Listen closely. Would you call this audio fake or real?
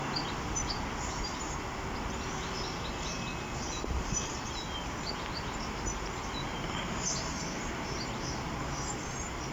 real